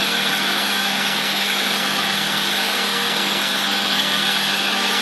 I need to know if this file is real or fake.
fake